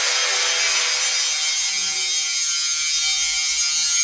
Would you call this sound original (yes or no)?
yes